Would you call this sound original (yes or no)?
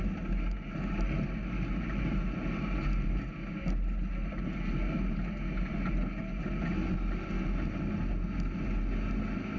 yes